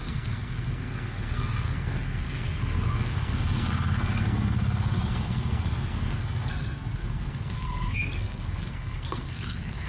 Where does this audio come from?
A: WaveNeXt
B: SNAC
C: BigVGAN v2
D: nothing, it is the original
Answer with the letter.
B